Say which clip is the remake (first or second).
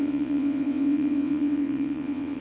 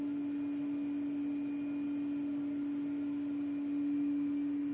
first